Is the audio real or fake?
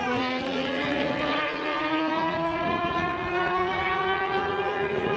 fake